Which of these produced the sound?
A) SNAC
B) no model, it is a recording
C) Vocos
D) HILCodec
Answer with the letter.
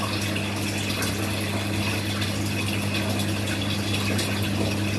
B